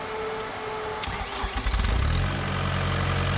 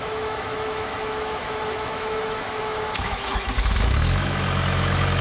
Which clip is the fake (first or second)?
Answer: second